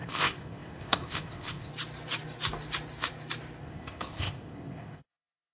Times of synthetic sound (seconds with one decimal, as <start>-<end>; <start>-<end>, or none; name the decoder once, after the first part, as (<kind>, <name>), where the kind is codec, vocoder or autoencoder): 0.0-1.7 (codec, ZipCodec); 3.6-5.5